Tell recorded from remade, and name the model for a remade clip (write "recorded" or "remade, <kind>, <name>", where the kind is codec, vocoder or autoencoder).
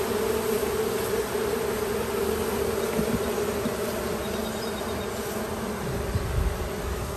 recorded